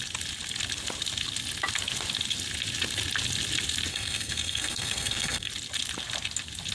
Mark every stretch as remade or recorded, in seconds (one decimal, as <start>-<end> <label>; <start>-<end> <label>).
0.0-3.9 recorded; 3.9-5.5 remade; 5.5-6.7 recorded